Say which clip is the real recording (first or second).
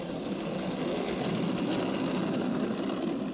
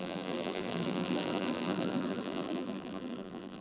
first